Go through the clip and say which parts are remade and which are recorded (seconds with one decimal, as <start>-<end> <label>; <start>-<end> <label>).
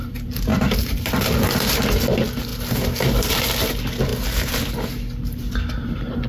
0.0-0.5 recorded; 0.5-1.8 remade; 1.8-6.3 recorded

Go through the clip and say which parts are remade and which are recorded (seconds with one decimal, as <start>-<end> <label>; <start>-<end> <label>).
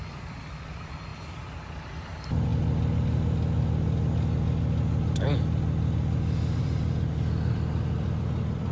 0.0-1.1 remade; 1.1-1.7 recorded; 1.7-2.5 remade; 2.5-6.6 recorded; 6.6-8.7 remade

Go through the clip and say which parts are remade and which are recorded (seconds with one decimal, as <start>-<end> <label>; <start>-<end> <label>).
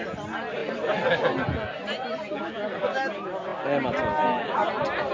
0.0-5.1 recorded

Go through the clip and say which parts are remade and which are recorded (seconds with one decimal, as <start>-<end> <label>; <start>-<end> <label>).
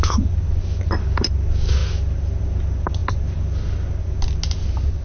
0.0-5.0 recorded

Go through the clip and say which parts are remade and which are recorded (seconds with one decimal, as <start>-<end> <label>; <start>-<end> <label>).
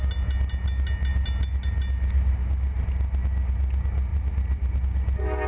0.0-4.1 recorded; 4.1-4.8 remade; 4.8-5.5 recorded